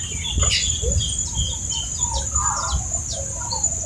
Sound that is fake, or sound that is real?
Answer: real